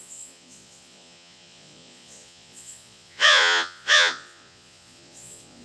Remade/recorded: remade